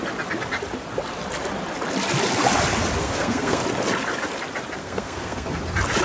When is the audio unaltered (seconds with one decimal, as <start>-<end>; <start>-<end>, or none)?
0.0-3.0; 3.6-4.8; 5.6-6.0